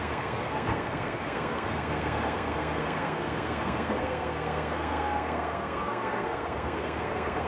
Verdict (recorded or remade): remade